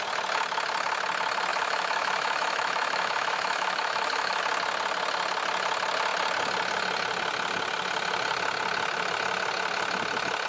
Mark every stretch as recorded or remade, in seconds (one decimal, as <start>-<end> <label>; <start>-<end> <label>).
0.0-1.5 recorded; 1.5-4.4 remade; 4.4-10.5 recorded